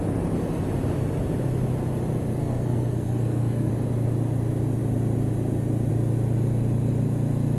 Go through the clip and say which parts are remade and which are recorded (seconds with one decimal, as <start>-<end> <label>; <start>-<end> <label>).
0.0-2.4 recorded; 2.4-3.7 remade; 3.7-7.6 recorded